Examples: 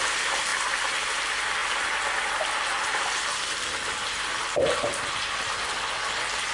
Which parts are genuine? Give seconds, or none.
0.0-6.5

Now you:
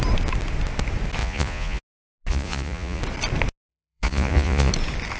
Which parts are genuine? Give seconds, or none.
0.0-1.2; 1.8-2.3; 3.0-3.7; 4.7-5.2